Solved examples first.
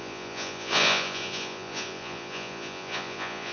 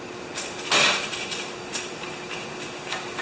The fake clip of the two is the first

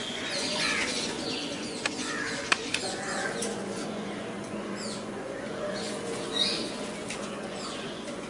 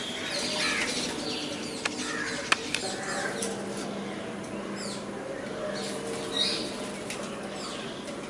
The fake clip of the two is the first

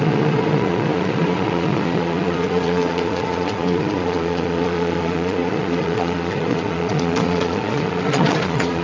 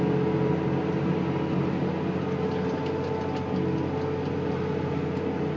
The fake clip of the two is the first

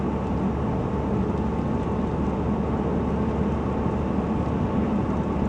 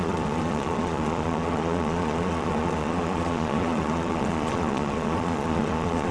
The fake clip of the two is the second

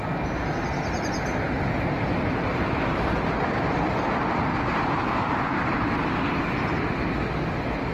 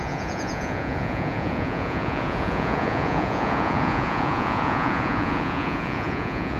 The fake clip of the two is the second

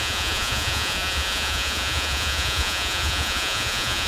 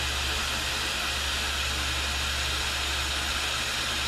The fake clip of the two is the first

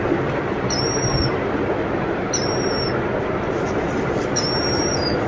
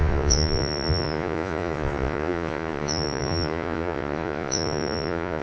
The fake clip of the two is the second